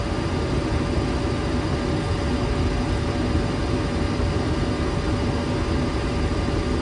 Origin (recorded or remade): recorded